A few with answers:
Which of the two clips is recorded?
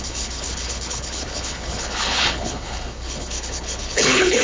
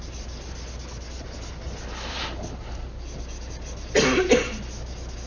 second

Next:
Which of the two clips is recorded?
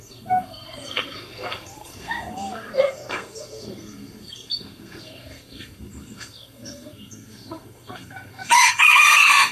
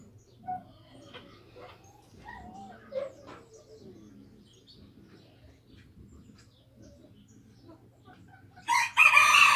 second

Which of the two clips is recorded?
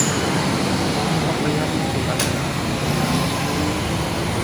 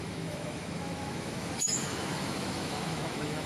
first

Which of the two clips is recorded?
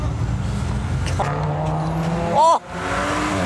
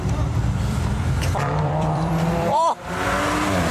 first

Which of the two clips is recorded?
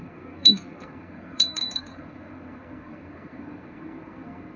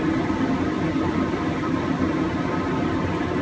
second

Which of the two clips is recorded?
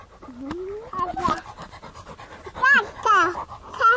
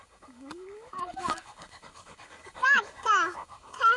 first